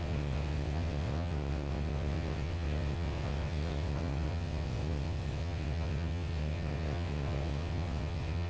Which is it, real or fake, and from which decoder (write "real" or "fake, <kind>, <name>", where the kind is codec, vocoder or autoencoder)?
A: fake, vocoder, WaveNeXt